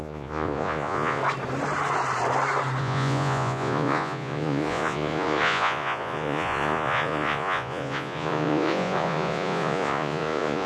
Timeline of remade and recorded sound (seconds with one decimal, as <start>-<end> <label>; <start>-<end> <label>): 0.0-1.2 remade; 1.2-2.8 recorded; 2.8-10.7 remade